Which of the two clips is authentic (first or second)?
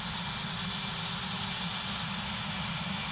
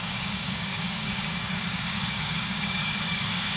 first